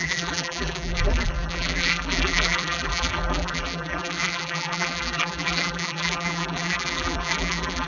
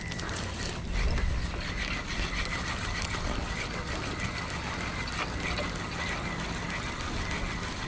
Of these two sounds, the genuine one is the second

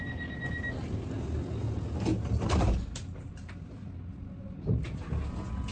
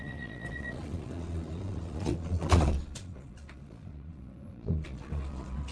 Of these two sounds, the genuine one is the first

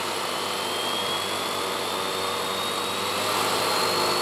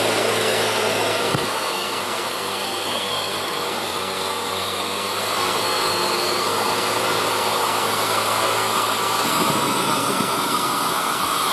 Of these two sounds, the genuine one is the first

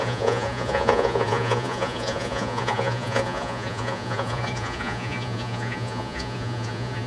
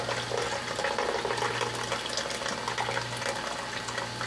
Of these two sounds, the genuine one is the second